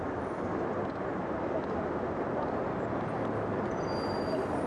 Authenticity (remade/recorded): recorded